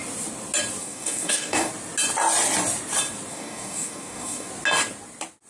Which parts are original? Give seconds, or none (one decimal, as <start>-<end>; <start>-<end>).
0.0-0.8; 1.7-3.3; 4.5-5.5